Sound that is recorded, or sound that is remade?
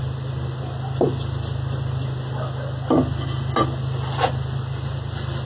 recorded